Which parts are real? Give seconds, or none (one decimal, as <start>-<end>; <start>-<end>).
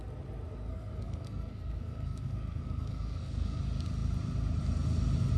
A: 0.0-0.7; 3.6-5.4